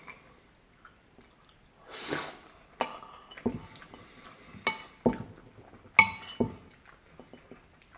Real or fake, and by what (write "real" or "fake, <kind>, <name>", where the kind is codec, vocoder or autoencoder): real